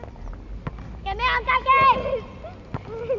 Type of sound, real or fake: real